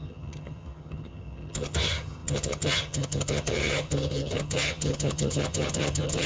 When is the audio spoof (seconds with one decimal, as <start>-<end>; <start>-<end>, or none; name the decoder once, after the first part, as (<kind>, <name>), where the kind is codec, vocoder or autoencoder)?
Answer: 0.0-6.3 (vocoder, HiFi-GAN)